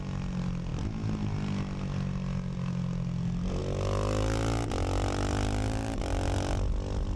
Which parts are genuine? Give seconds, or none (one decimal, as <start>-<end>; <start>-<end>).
0.0-7.2